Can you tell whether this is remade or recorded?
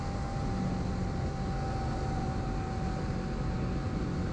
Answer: recorded